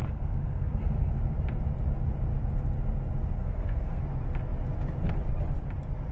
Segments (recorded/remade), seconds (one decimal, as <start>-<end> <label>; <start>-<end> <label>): 0.0-1.2 remade; 1.2-3.4 recorded; 3.4-4.0 remade; 4.0-6.1 recorded